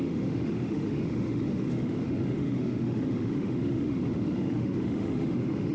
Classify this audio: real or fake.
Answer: fake